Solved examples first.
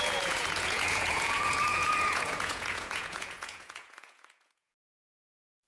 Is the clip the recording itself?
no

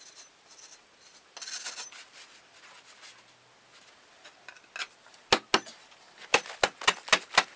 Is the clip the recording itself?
yes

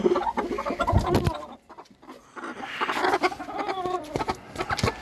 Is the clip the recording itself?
yes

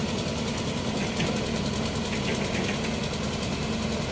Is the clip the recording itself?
yes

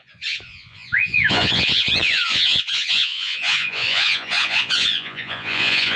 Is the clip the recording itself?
no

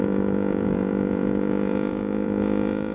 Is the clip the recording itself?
no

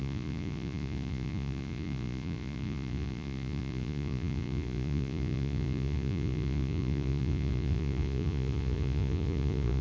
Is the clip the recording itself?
no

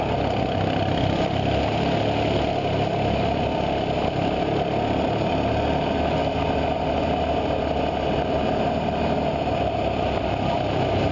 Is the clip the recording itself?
yes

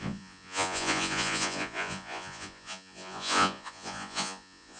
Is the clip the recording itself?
no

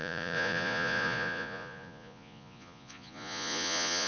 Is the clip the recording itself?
no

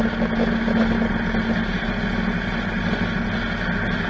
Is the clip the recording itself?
yes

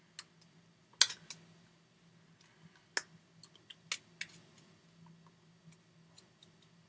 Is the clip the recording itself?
yes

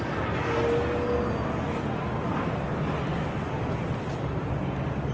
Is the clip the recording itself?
yes